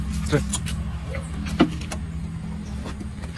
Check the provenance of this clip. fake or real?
real